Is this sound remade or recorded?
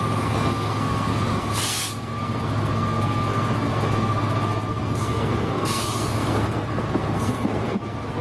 remade